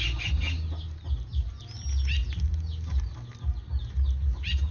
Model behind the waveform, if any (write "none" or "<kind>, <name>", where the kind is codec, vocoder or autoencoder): none